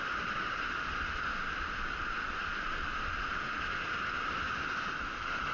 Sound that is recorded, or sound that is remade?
recorded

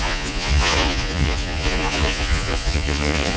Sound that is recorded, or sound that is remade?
remade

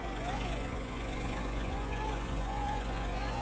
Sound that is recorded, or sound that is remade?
remade